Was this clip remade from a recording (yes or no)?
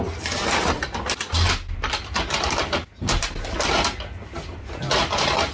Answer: no